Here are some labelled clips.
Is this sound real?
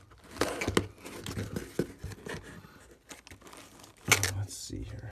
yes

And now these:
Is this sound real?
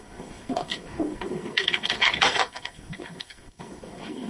no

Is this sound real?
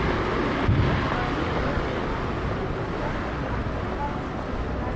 yes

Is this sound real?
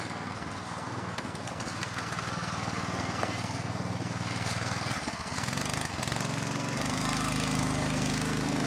no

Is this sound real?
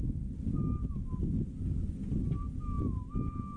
yes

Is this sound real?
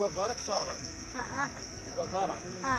no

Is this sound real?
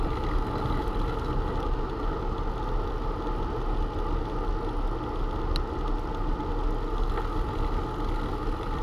yes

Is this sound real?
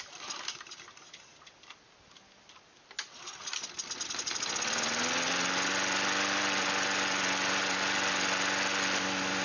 yes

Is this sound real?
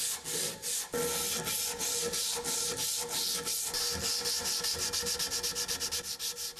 yes